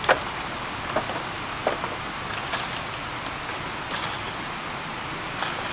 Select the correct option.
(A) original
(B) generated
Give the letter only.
A